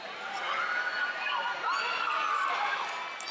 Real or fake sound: real